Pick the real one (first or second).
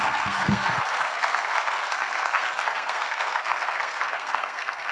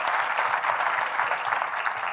second